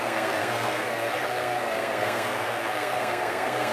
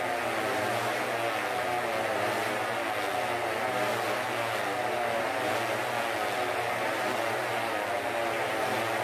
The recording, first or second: second